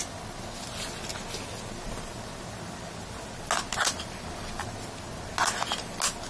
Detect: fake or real real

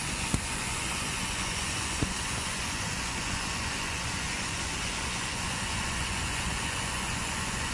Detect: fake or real fake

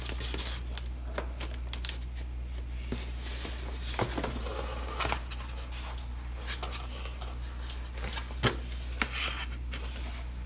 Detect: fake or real real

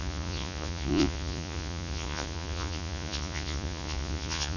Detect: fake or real fake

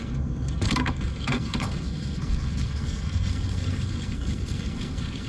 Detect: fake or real fake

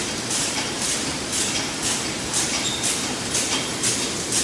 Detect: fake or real fake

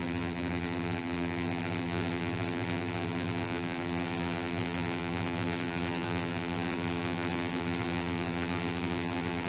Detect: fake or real fake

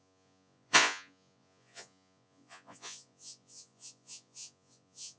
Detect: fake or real fake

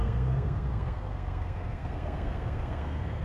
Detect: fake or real fake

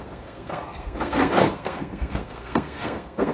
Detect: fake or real fake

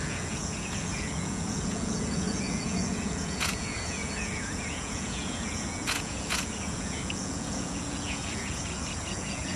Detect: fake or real fake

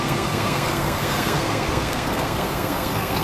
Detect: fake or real fake